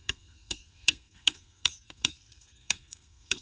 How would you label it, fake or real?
fake